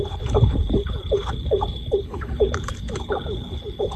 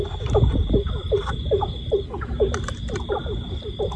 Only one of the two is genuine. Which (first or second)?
second